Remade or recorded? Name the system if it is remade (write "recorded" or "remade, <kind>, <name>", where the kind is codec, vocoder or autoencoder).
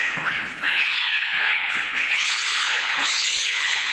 remade, codec, HILCodec